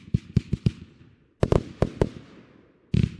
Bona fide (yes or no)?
yes